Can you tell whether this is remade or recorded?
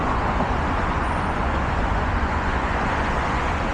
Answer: remade